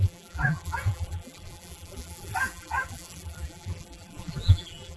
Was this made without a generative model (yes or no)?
no